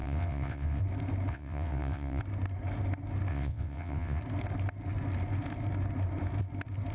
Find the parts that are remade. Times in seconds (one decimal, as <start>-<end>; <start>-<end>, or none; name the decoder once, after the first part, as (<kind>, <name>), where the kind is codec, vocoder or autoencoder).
0.0-0.8 (vocoder, WaveNeXt); 1.3-2.2; 3.3-4.2